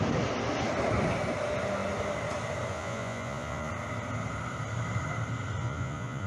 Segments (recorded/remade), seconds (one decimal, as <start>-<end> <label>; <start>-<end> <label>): 0.0-2.7 recorded; 2.7-3.7 remade; 3.7-5.6 recorded; 5.6-6.3 remade